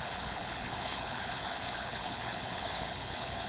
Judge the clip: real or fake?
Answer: fake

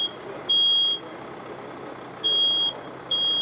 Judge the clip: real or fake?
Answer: real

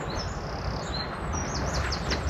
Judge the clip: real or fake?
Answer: real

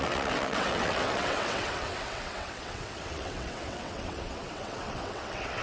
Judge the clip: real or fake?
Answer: fake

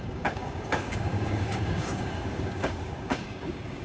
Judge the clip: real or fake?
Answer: fake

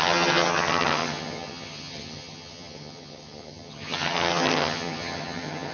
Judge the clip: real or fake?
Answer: fake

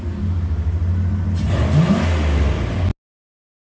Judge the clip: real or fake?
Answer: real